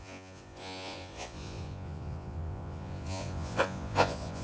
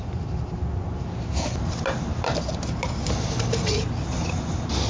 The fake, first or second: first